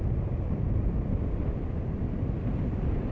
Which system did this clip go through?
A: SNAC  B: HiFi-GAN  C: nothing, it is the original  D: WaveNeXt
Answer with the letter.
C